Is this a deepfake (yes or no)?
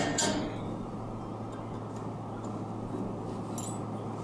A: no